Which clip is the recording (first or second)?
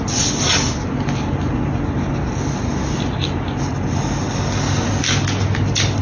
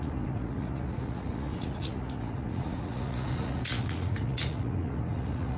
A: first